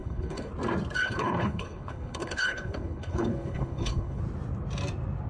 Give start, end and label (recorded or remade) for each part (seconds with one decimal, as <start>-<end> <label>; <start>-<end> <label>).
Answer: 0.0-0.5 remade; 0.5-1.0 recorded; 1.0-4.2 remade; 4.2-5.3 recorded

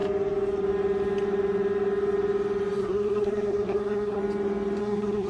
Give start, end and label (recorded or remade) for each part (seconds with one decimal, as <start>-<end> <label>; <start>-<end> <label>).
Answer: 0.0-2.8 recorded; 2.8-4.2 remade; 4.2-4.8 recorded; 4.8-5.3 remade